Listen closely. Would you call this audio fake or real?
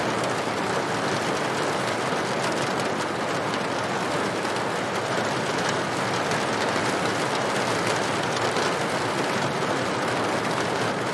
real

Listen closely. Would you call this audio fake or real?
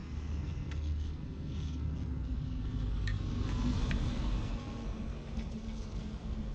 fake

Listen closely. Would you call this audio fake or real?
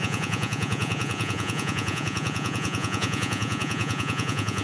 fake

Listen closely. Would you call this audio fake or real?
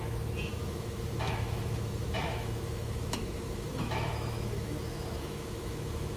fake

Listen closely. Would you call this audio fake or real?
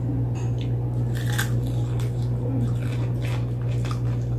real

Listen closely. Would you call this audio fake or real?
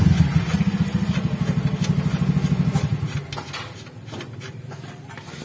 real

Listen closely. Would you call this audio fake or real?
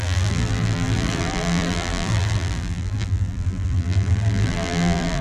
fake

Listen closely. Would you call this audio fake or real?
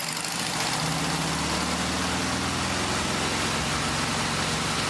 real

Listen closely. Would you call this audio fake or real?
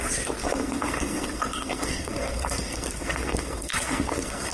fake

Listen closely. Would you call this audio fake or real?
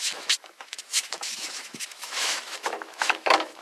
fake